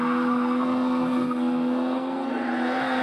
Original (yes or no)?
no